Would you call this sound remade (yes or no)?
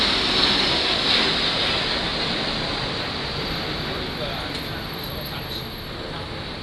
no